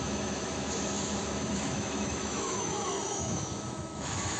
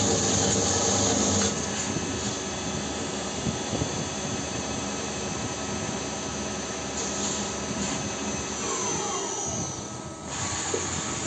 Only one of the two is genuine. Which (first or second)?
second